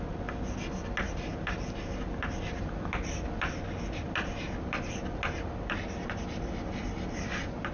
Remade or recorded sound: recorded